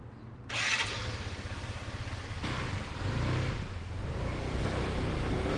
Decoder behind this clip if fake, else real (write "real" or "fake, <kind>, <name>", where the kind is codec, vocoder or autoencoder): real